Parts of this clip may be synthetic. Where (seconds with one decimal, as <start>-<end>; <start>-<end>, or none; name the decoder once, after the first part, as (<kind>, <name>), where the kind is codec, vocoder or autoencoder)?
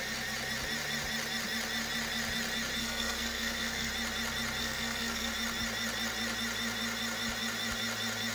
2.8-3.9 (codec, SNAC); 4.6-5.3